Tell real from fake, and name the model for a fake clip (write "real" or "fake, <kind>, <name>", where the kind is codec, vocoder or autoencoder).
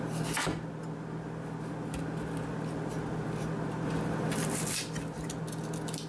real